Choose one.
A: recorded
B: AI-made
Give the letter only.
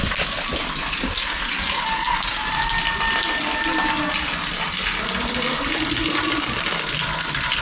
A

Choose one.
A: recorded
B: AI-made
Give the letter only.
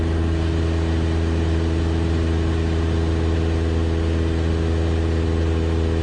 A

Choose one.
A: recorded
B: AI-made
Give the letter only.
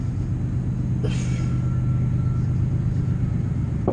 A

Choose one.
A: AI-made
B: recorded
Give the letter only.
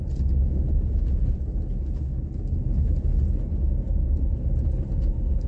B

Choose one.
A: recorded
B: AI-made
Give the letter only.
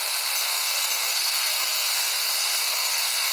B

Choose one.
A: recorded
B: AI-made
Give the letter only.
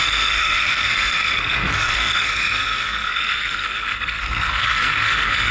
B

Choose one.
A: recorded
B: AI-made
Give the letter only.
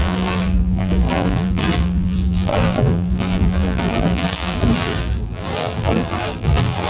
B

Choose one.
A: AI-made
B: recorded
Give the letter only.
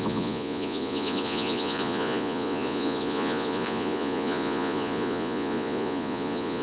A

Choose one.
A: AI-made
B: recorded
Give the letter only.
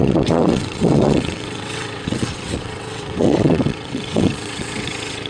A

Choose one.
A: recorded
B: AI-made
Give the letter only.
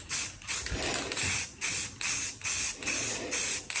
A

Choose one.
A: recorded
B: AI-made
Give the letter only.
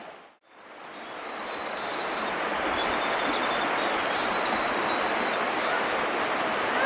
A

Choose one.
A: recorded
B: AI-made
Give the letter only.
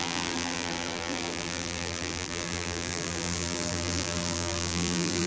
B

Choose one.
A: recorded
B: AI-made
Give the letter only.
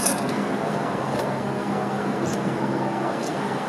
B